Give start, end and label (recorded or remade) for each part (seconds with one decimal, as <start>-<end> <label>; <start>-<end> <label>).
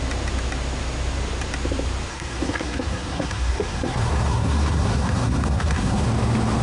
0.0-2.1 recorded; 2.1-6.1 remade; 6.1-6.6 recorded